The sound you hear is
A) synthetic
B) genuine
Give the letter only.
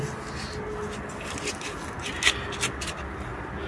B